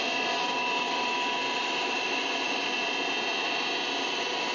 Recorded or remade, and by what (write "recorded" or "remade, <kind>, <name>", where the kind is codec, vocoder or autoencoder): recorded